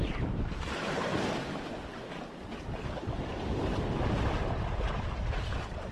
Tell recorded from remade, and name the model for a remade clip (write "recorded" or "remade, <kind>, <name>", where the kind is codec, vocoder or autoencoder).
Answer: recorded